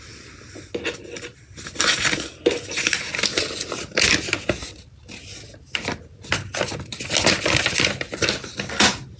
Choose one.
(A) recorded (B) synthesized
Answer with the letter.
A